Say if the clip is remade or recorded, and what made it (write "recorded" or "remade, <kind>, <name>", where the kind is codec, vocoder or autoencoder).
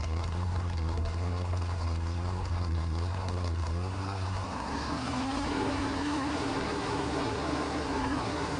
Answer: remade, codec, SNAC